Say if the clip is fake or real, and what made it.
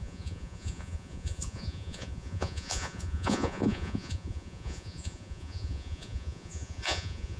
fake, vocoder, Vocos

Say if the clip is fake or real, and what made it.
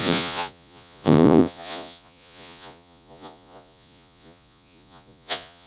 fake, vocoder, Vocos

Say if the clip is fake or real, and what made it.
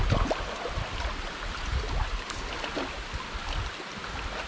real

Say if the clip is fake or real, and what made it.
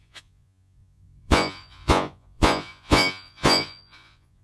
fake, vocoder, Vocos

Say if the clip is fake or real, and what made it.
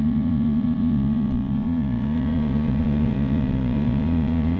fake, vocoder, Vocos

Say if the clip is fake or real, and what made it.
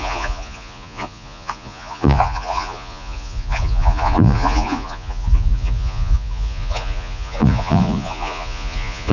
fake, vocoder, Vocos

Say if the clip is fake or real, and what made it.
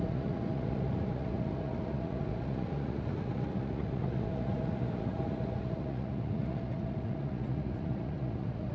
fake, vocoder, Vocos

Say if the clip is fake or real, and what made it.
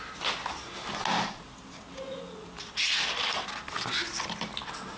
real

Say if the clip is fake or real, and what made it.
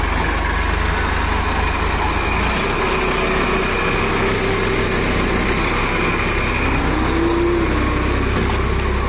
real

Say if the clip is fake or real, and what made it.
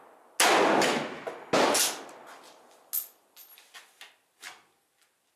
real